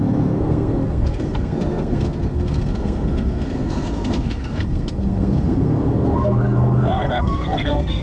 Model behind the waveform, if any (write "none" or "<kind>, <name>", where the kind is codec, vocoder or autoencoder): codec, SNAC